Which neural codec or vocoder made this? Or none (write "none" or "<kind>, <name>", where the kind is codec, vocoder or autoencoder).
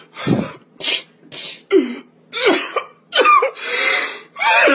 none